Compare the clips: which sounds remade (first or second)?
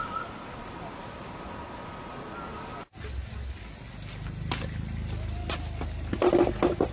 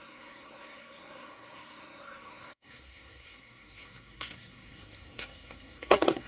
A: second